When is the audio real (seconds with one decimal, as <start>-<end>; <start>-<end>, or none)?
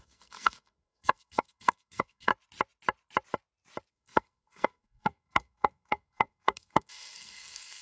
2.3-3.9